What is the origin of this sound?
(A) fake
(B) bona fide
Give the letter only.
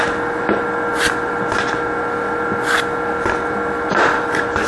B